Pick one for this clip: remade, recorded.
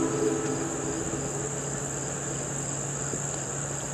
recorded